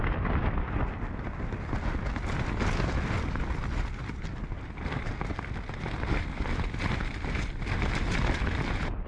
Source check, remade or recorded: recorded